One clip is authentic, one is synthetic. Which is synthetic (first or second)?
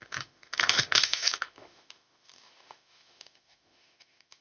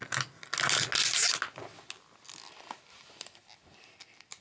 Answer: first